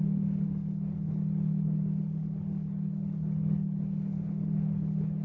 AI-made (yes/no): yes